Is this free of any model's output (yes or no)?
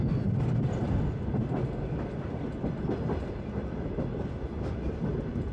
yes